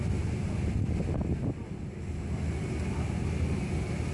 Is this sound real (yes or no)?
yes